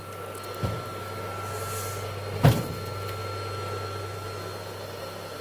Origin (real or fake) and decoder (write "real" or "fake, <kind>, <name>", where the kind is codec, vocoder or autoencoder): real